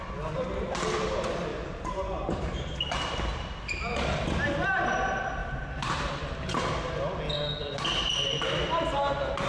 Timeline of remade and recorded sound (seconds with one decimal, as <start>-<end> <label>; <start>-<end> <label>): 0.0-1.5 recorded; 1.5-2.7 remade; 2.7-3.3 recorded; 3.3-3.9 remade; 3.9-5.4 recorded; 5.4-6.2 remade; 6.2-9.5 recorded